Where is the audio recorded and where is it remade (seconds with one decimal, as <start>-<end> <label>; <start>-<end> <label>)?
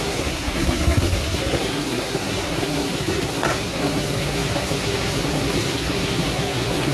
0.0-6.9 remade